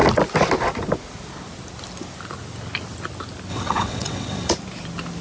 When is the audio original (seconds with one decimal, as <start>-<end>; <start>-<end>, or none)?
0.0-3.5; 4.5-5.2